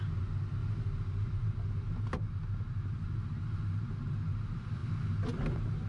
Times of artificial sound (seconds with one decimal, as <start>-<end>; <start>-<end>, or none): 0.6-1.5